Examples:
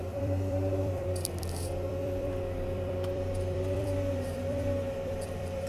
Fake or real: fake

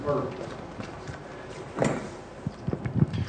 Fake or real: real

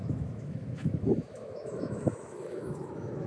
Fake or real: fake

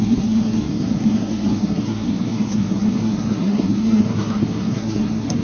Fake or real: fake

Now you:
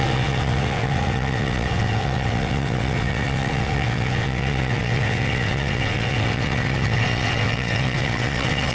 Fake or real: fake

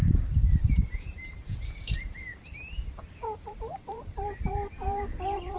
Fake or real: fake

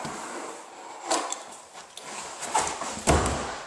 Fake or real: real